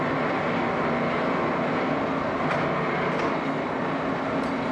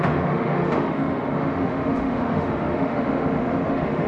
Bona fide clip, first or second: first